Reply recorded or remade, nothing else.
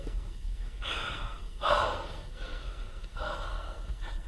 remade